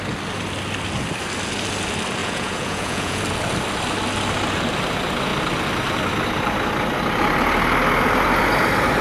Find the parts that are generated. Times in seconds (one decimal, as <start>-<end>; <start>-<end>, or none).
2.2-3.2